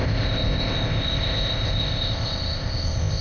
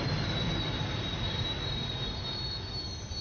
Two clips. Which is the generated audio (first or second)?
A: first